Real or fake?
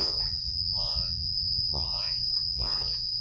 fake